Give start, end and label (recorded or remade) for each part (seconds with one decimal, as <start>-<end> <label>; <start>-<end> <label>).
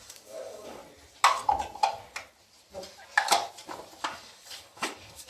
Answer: 0.0-0.8 remade; 0.8-4.0 recorded; 4.0-5.3 remade